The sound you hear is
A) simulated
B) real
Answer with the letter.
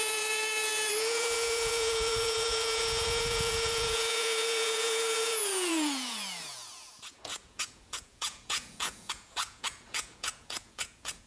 A